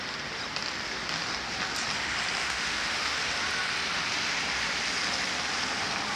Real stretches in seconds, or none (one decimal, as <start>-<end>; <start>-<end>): 0.0-2.4; 3.2-6.2